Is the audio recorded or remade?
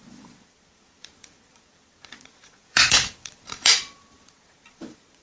remade